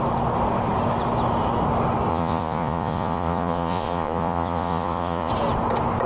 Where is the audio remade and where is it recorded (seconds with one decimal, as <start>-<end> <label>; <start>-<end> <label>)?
0.0-2.1 recorded; 2.1-5.3 remade; 5.3-6.1 recorded